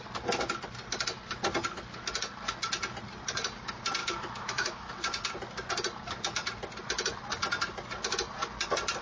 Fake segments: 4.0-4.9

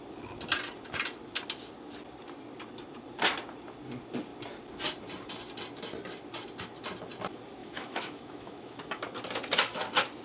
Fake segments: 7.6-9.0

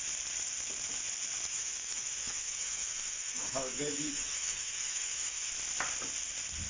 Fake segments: 1.5-5.5

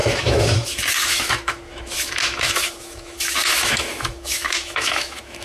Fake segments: 0.0-5.4

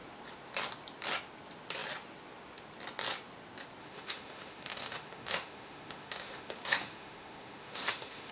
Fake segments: 3.8-8.3

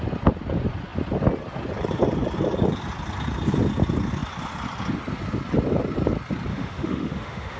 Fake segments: 6.5-7.6

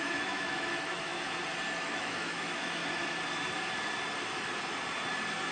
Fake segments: 0.0-1.1; 1.7-2.8